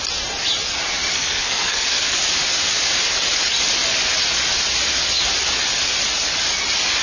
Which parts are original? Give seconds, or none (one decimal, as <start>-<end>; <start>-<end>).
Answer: 0.0-1.1; 2.2-7.0